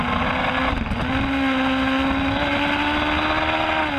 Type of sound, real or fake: real